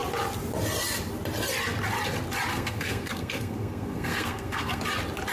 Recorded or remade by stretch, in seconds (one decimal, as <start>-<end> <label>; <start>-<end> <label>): 0.0-2.5 recorded; 2.5-4.8 remade; 4.8-5.3 recorded